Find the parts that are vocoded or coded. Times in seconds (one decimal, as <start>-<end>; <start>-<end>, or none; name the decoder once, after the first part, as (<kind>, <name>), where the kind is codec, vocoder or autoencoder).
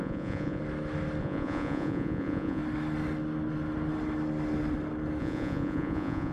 0.0-0.6 (vocoder, Vocos); 1.2-2.6; 5.2-6.3